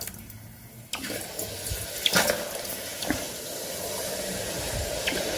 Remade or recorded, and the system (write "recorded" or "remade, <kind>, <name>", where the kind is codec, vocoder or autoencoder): recorded